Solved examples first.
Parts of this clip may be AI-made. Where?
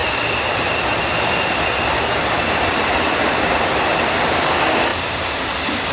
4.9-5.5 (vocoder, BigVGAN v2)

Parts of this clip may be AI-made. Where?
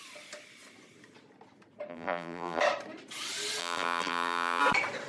1.9-2.6 (vocoder, BigVGAN v2); 3.6-4.6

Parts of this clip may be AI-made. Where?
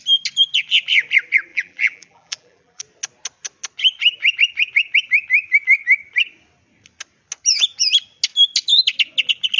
1.5-2.8 (vocoder, BigVGAN v2)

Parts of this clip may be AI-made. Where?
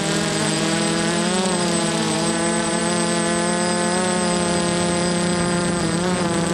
0.0-2.8 (vocoder, BigVGAN v2); 5.8-6.5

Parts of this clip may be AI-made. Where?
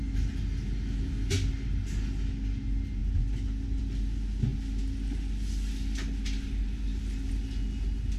none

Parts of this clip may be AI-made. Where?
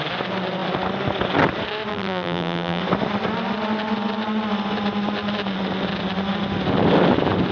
1.9-2.8 (vocoder, BigVGAN v2)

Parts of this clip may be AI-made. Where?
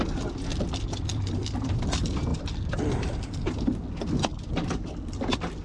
0.5-1.8 (vocoder, BigVGAN v2); 2.3-3.4